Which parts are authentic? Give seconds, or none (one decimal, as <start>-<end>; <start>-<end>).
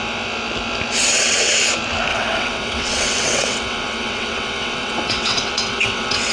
0.0-1.0; 1.6-2.1